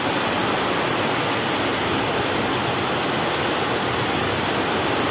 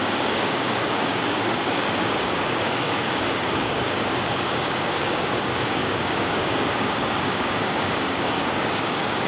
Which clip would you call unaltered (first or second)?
first